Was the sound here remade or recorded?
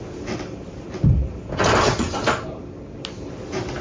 recorded